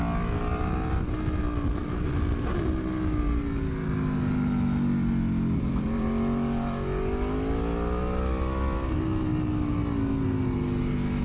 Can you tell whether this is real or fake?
real